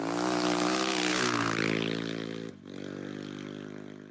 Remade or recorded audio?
recorded